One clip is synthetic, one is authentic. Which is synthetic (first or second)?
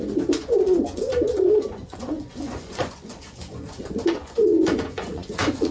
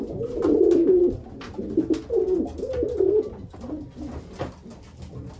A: first